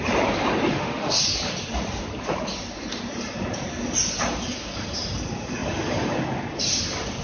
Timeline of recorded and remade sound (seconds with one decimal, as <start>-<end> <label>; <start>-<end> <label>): 0.0-0.7 recorded; 0.7-1.2 remade; 1.2-7.2 recorded